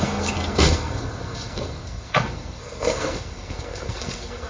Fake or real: fake